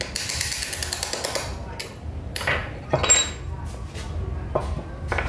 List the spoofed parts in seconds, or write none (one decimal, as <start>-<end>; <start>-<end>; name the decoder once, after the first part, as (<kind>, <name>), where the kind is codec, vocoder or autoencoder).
none